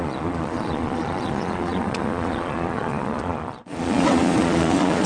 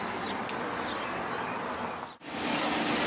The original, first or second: second